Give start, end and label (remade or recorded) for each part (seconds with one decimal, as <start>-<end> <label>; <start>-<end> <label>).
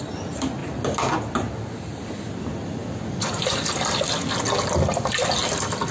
0.0-5.9 recorded